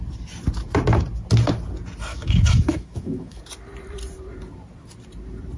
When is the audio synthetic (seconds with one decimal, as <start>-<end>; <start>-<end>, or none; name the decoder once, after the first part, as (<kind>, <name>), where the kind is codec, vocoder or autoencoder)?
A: 2.1-3.4 (autoencoder, DAC-VAE)